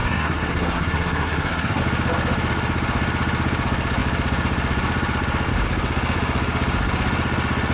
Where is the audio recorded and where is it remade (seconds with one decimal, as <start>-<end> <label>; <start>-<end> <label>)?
0.0-1.8 remade; 1.8-7.7 recorded